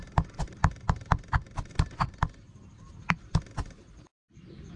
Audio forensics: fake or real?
real